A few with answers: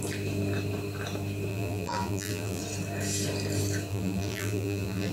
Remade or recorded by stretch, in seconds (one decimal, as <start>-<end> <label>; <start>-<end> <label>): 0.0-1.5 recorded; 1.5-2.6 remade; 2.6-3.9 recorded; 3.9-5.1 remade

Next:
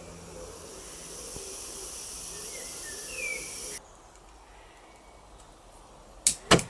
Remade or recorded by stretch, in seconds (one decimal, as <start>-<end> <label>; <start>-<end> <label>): 0.0-6.7 recorded

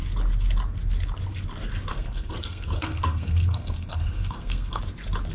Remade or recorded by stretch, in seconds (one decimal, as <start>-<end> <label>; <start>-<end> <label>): 0.0-1.9 recorded; 1.9-4.8 remade; 4.8-5.3 recorded